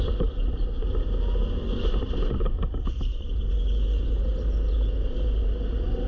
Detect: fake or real real